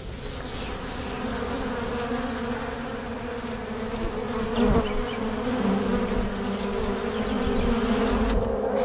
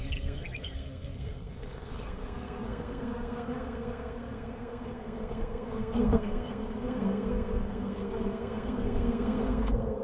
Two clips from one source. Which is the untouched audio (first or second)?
first